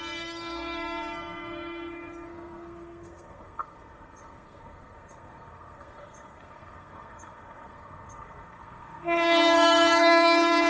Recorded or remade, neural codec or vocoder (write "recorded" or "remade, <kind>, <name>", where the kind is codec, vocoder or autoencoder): remade, codec, SNAC